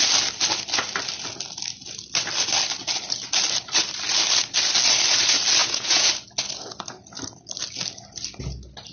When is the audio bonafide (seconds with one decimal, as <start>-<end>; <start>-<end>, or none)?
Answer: 0.0-5.6; 6.1-8.9